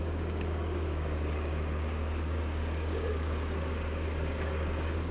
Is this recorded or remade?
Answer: remade